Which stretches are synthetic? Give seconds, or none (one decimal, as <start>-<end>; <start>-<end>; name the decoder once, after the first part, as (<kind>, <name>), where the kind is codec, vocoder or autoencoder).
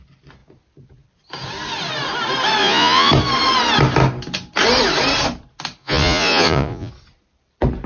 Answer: 2.6-3.1 (vocoder, Vocos); 5.8-6.9